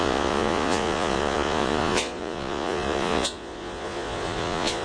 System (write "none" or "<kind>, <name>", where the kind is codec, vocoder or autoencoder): vocoder, Vocos